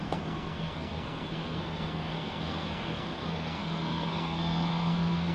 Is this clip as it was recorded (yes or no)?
no